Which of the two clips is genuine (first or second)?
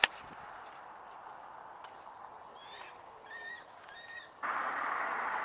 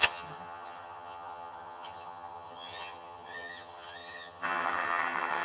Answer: first